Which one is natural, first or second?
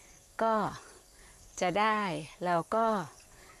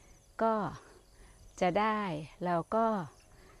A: second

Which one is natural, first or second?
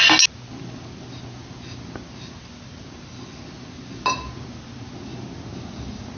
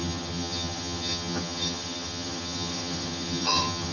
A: first